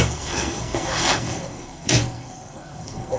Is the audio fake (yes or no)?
yes